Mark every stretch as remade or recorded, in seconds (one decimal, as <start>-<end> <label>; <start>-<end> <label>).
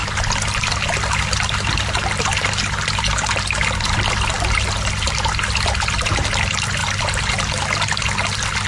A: 0.0-8.7 recorded